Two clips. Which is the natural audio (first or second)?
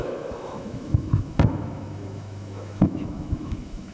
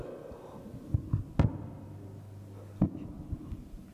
second